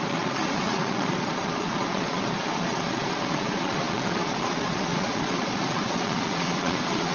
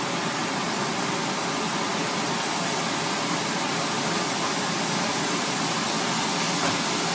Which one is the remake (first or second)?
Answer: first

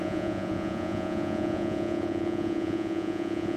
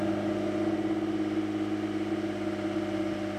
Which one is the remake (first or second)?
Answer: first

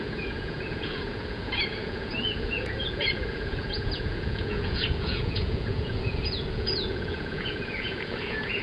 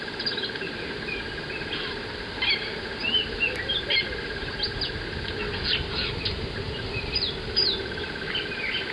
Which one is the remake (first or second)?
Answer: first